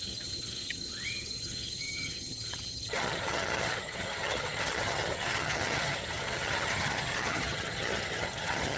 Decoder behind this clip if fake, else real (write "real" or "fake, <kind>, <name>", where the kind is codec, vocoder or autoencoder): fake, vocoder, HiFi-GAN